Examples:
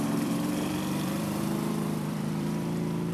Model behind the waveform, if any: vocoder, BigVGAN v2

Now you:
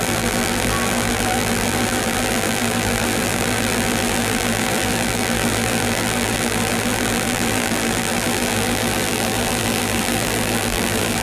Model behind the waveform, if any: vocoder, BigVGAN v2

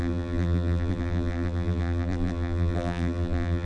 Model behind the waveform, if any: vocoder, BigVGAN v2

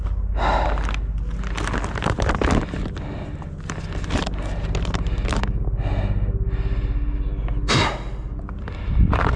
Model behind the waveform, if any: none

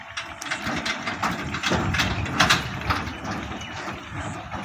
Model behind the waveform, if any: none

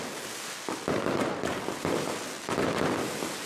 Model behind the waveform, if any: none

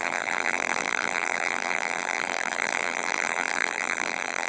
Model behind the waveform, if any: vocoder, BigVGAN v2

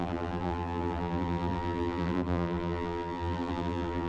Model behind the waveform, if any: vocoder, BigVGAN v2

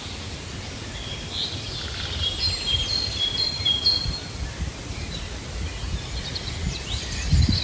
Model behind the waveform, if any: none